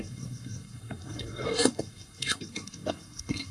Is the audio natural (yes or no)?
no